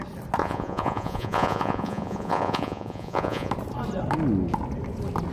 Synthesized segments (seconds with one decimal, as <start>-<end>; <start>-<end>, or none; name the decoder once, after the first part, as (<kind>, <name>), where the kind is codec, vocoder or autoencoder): 0.4-3.5 (vocoder, Vocos)

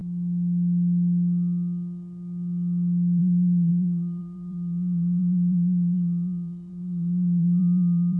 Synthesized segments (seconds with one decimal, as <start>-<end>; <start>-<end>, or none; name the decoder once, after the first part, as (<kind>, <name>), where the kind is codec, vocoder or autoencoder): 3.2-8.2 (vocoder, BigVGAN v2)

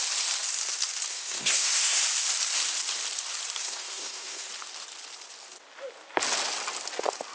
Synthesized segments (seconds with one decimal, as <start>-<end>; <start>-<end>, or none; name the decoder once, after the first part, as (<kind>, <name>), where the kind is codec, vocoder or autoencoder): 1.1-2.0 (codec, SNAC); 3.6-4.5

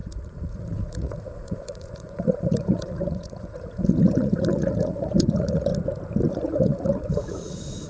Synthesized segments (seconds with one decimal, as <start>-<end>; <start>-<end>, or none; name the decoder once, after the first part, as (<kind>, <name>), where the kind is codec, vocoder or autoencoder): 0.0-5.7 (vocoder, Vocos); 6.3-7.9